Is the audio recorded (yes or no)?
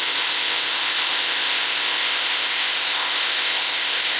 no